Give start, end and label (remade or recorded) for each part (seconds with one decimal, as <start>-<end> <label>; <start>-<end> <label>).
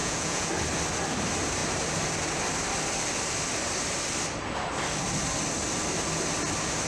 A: 0.0-0.5 remade; 0.5-6.9 recorded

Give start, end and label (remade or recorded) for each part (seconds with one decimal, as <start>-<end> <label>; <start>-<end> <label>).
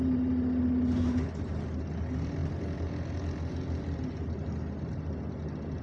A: 0.0-5.8 recorded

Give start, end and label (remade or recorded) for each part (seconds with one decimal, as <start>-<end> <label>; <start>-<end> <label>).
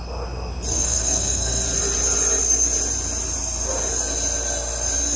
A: 0.0-0.7 recorded; 0.7-1.6 remade; 1.6-5.2 recorded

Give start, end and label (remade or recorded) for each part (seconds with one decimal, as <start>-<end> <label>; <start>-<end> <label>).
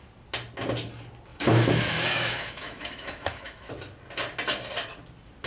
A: 0.0-1.3 recorded; 1.3-3.7 remade; 3.7-5.5 recorded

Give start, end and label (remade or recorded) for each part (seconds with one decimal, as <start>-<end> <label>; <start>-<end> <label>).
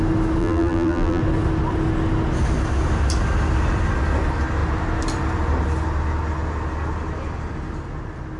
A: 0.0-0.4 recorded; 0.4-1.2 remade; 1.2-8.4 recorded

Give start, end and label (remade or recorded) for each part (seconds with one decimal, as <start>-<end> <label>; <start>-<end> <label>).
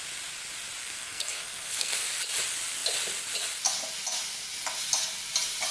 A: 0.0-0.8 recorded; 0.8-2.2 remade; 2.2-5.7 recorded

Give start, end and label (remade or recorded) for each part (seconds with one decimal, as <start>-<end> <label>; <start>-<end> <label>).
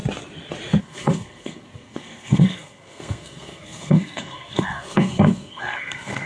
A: 0.0-0.8 recorded; 0.8-6.3 remade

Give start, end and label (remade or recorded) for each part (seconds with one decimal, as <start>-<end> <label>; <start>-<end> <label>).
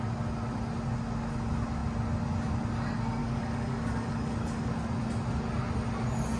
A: 0.0-3.2 recorded; 3.2-4.7 remade; 4.7-6.4 recorded